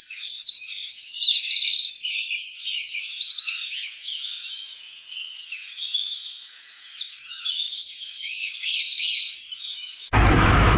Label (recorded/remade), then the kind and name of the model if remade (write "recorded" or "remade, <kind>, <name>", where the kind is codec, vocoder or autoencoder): remade, autoencoder, DAC-VAE